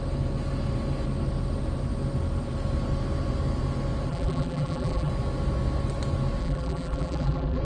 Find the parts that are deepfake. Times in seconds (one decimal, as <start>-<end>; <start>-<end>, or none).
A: 4.1-5.1; 6.4-7.6